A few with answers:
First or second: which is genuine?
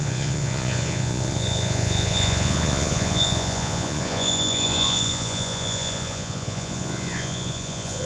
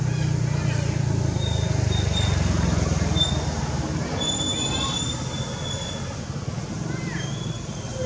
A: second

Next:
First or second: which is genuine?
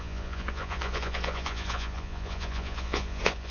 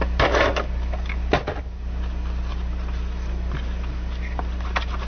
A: second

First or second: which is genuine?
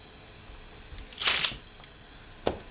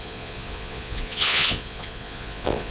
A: first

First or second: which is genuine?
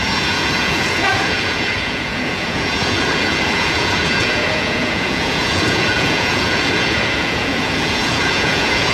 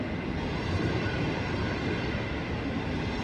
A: second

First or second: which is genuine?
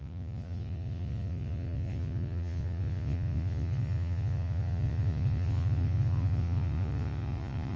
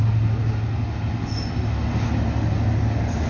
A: second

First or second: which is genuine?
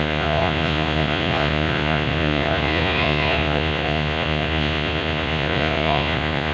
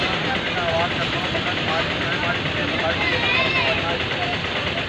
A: second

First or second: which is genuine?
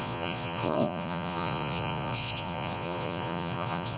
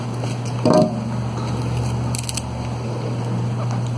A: second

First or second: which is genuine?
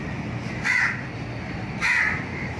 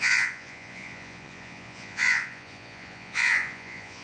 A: first